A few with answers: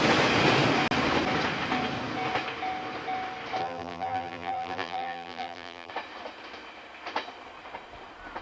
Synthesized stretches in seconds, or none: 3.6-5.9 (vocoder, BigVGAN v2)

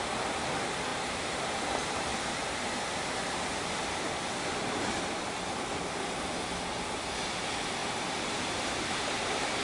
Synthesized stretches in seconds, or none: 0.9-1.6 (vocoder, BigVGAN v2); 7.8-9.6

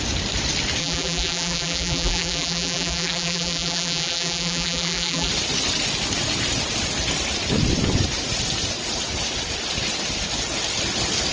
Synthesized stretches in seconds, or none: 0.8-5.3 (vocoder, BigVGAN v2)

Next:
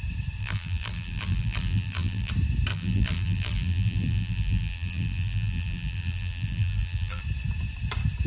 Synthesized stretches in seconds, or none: 0.4-2.3 (vocoder, BigVGAN v2); 2.7-7.2

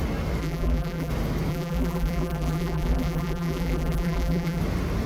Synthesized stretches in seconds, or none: 0.4-1.1 (vocoder, BigVGAN v2); 1.5-4.6

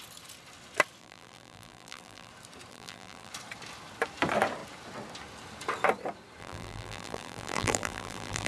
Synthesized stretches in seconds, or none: 1.0-2.3 (vocoder, BigVGAN v2); 2.7-3.3; 6.4-8.5

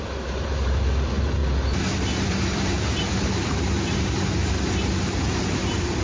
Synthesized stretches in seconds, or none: 0.0-1.4 (vocoder, BigVGAN v2); 2.0-6.0